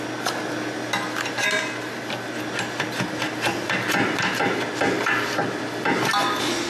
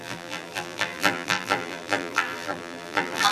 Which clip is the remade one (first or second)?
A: second